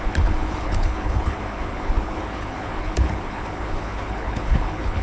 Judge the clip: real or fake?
fake